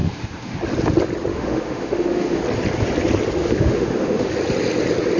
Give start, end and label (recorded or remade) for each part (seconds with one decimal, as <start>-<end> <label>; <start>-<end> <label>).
0.0-0.6 remade; 0.6-1.3 recorded; 1.3-2.4 remade; 2.4-3.4 recorded; 3.4-4.3 remade; 4.3-5.2 recorded